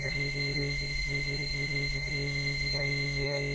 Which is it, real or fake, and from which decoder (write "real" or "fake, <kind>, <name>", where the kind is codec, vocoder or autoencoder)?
fake, codec, SNAC